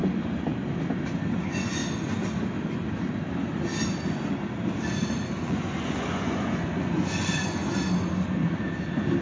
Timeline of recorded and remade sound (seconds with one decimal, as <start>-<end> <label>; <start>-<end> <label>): 0.0-1.4 recorded; 1.4-1.8 remade; 1.8-5.4 recorded; 5.4-7.6 remade; 7.6-9.2 recorded